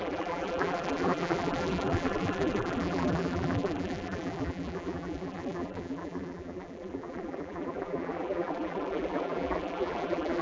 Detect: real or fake fake